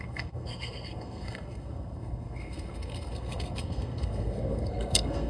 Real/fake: fake